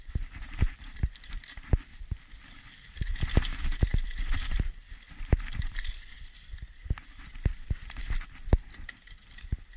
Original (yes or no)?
yes